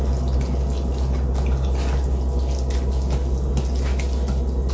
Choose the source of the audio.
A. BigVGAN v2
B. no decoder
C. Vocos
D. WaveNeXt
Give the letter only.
B